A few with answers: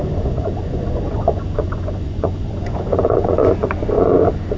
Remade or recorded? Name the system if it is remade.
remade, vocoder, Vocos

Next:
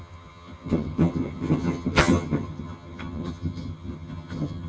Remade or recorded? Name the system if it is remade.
remade, vocoder, HiFi-GAN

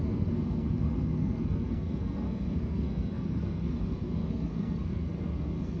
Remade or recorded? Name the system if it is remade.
remade, codec, SNAC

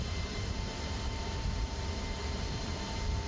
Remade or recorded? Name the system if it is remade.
remade, vocoder, BigVGAN v2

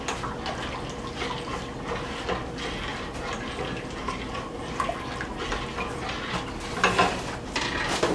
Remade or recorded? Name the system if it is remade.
recorded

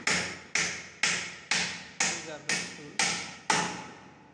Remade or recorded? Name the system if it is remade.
recorded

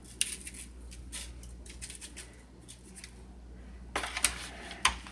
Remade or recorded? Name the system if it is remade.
recorded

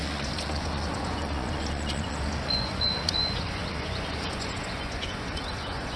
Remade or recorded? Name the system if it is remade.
remade, vocoder, Vocos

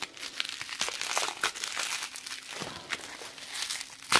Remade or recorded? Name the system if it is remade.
recorded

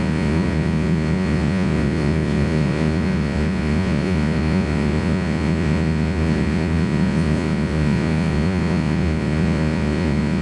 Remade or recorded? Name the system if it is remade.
remade, vocoder, Vocos